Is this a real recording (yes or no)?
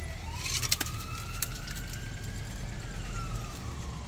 yes